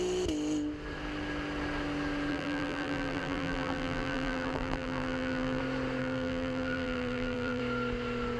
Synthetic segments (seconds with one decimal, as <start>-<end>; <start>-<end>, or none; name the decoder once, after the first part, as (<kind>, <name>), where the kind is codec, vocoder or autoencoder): 2.3-5.6 (vocoder, BigVGAN v2); 6.0-7.6